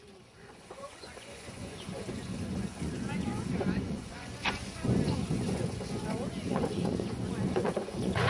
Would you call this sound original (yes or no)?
no